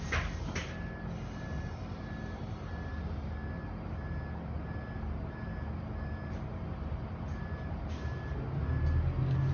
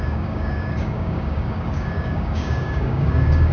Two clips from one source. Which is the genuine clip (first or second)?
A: first